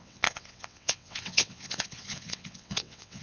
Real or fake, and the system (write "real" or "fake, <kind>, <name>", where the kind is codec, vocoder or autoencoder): fake, vocoder, WaveNeXt